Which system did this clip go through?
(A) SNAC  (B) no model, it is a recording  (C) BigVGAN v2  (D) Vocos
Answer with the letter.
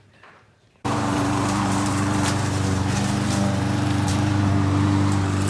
C